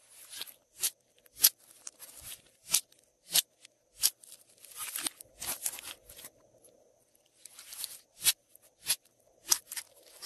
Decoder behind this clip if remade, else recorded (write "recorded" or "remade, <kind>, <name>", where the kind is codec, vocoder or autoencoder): recorded